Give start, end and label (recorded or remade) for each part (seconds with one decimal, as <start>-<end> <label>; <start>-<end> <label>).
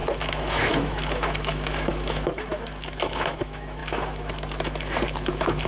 0.0-5.7 remade